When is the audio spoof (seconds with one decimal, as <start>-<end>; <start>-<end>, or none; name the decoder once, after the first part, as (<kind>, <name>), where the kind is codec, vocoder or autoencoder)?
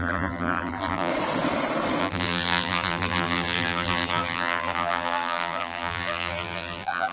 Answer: 0.0-1.1 (vocoder, BigVGAN v2); 2.0-7.1